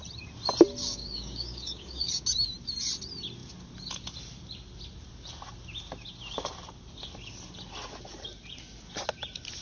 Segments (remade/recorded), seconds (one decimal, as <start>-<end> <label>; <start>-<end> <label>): 0.0-0.8 recorded; 0.8-2.1 remade; 2.1-9.6 recorded